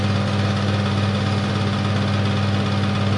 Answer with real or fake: real